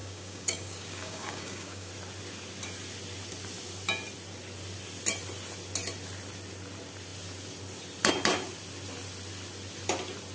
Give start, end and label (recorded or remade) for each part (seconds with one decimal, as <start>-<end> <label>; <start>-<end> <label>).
0.0-1.9 remade; 1.9-10.3 recorded